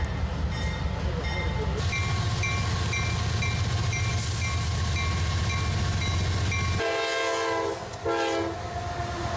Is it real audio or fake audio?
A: real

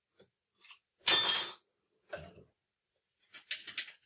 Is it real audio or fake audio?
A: real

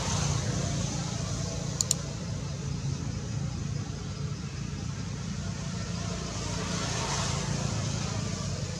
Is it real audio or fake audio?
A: real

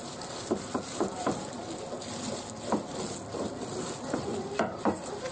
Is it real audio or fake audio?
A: fake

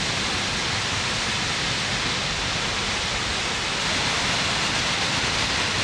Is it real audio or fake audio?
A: real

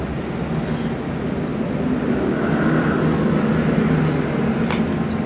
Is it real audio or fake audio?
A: real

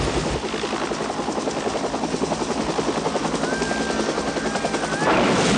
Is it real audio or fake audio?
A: real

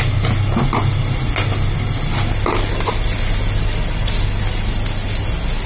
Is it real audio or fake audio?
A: real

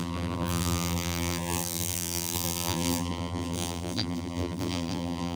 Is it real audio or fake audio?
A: fake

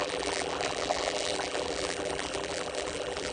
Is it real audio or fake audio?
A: fake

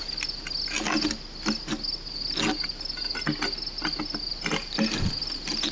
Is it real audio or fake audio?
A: real